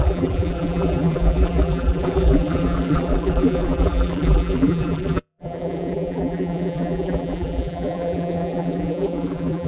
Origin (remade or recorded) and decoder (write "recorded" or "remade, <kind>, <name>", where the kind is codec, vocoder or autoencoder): remade, vocoder, BigVGAN v2